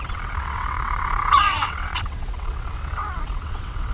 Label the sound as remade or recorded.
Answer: remade